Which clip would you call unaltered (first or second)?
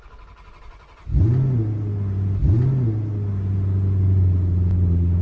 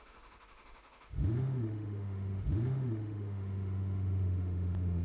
first